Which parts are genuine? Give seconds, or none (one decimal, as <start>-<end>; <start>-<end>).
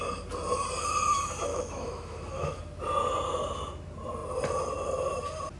0.0-1.5; 2.6-5.6